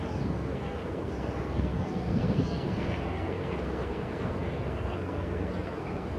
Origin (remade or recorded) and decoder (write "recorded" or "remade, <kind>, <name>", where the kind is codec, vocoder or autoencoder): remade, codec, SNAC